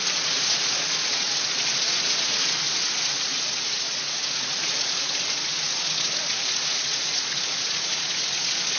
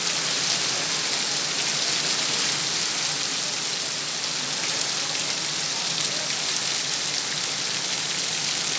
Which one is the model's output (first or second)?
first